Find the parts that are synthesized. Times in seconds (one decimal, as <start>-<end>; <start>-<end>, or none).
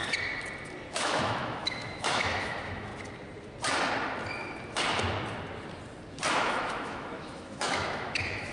0.9-2.9; 6.3-8.5